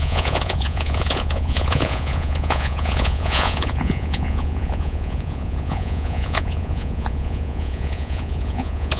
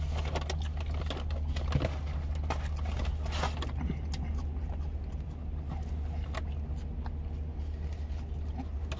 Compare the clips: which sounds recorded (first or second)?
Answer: second